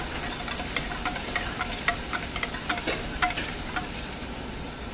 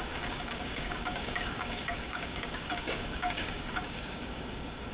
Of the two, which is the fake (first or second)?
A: second